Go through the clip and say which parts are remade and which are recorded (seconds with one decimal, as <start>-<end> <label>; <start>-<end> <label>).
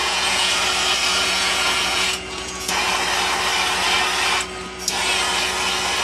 0.0-0.5 remade; 0.5-1.1 recorded; 1.1-2.9 remade; 2.9-6.0 recorded